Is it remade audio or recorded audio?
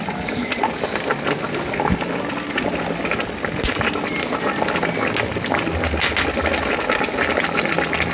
recorded